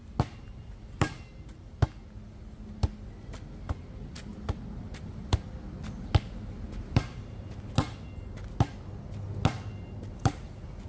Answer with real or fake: real